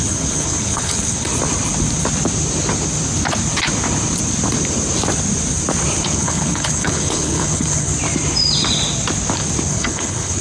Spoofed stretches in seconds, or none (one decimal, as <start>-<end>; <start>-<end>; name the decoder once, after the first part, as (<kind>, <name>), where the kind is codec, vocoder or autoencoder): 0.0-1.3 (codec, HILCodec); 6.1-7.9; 9.7-10.4